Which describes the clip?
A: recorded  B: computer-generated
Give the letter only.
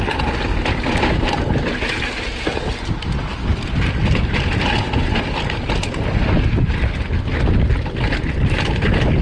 A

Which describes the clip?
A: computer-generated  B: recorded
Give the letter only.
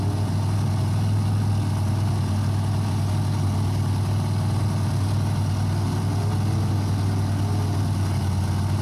B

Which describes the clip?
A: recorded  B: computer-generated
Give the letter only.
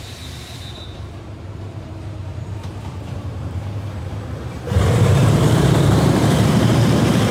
B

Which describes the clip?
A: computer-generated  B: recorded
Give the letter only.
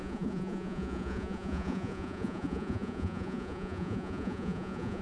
A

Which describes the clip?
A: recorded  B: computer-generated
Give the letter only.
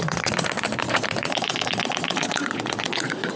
B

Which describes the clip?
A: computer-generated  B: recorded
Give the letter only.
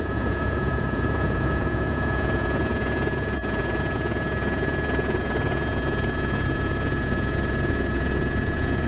A